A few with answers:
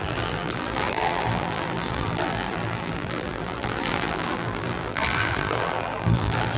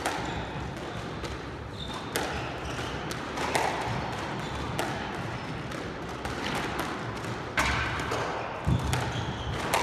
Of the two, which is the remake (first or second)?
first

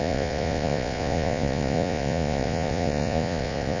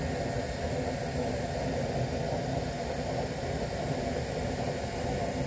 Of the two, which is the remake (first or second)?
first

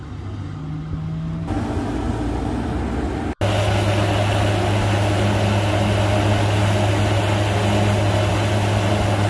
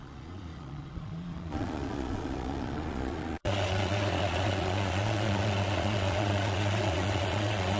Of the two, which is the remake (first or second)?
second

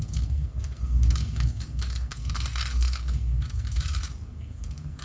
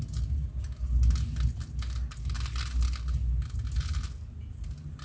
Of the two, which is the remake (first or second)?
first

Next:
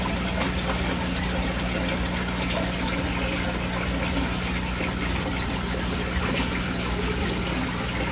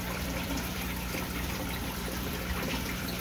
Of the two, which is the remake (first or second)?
second